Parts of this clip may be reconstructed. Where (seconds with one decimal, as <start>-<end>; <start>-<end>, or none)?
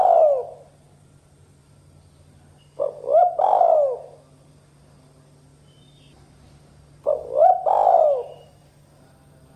none